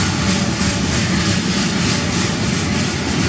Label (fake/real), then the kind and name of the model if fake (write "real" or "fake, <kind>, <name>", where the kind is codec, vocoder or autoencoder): real